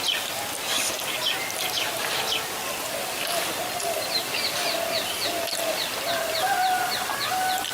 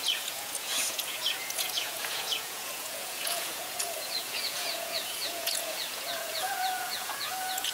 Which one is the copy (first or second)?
second